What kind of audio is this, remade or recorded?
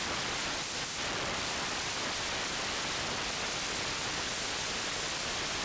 recorded